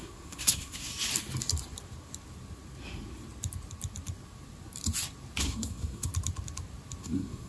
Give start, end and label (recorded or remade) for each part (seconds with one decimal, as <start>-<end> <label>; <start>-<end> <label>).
0.0-0.9 remade; 0.9-5.4 recorded; 5.4-6.1 remade; 6.1-7.0 recorded; 7.0-7.5 remade